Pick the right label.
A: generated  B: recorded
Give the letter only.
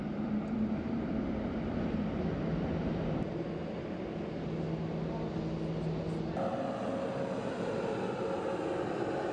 B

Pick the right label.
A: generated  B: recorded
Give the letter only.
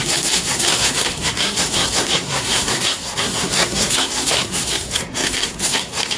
A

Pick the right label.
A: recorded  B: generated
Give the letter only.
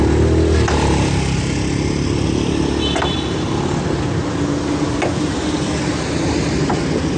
A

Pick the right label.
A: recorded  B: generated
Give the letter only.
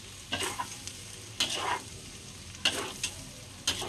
A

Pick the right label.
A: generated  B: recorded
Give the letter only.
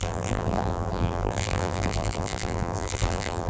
A